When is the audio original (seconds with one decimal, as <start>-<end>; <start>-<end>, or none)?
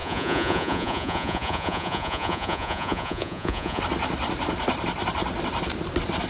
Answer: 3.8-6.3